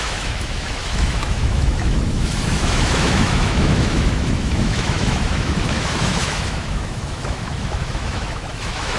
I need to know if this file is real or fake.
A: fake